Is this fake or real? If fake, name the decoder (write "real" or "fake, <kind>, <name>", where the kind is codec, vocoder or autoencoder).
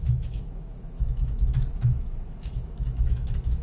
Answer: fake, autoencoder, DAC-VAE